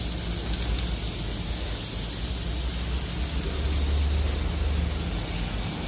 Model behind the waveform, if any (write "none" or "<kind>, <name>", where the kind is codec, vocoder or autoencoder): none